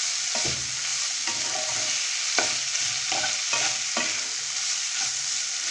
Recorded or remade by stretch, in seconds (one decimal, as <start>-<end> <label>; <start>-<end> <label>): 0.0-5.7 recorded